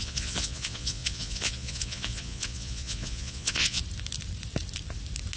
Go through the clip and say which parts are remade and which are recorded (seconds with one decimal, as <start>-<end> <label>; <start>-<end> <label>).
0.0-3.8 remade; 3.8-5.4 recorded